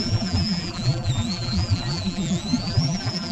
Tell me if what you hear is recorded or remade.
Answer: remade